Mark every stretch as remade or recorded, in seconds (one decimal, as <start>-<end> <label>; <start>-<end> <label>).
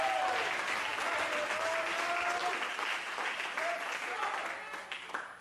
0.0-5.4 recorded